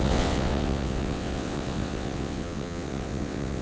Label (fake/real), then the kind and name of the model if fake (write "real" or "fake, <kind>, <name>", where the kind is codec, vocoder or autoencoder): fake, vocoder, WaveNeXt